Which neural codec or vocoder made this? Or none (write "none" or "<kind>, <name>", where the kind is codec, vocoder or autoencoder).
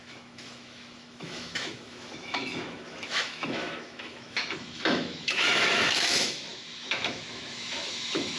autoencoder, DAC-VAE